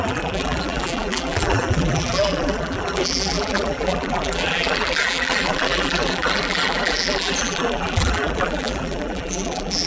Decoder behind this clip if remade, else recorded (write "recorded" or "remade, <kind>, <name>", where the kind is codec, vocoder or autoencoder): remade, vocoder, BigVGAN v2